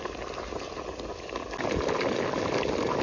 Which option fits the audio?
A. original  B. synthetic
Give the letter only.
A